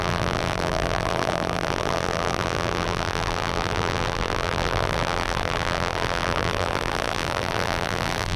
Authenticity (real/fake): fake